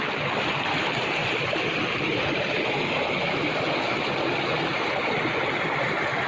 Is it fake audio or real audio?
real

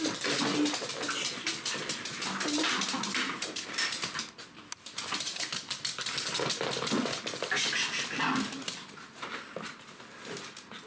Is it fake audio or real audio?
real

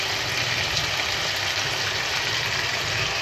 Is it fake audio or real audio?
real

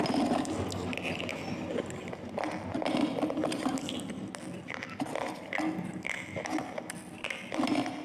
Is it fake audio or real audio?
real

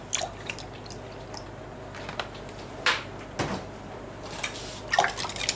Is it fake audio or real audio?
real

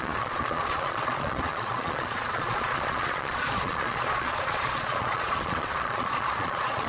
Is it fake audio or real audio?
fake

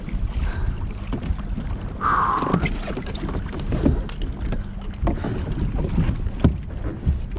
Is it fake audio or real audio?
real